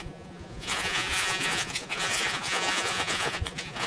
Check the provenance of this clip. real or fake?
fake